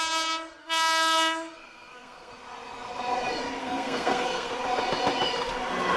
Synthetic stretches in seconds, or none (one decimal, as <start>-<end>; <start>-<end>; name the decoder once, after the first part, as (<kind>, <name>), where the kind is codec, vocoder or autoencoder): 0.6-2.3 (codec, SNAC); 3.6-4.5